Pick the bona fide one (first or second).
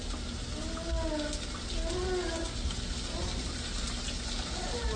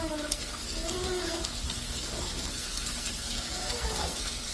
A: first